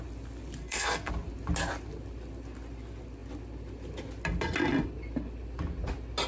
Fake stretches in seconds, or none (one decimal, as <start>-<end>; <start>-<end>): 0.6-1.1